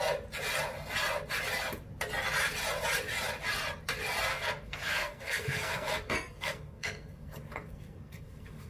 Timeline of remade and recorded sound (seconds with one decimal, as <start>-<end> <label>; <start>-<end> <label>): 0.0-4.3 recorded; 4.3-8.7 remade

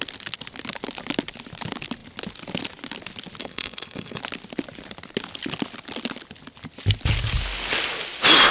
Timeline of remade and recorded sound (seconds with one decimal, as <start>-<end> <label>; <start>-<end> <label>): 0.0-3.4 recorded; 3.4-4.2 remade; 4.2-8.5 recorded

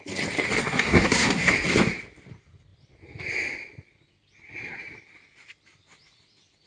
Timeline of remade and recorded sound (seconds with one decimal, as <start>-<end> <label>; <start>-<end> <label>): 0.0-0.6 recorded; 0.6-1.5 remade; 1.5-6.7 recorded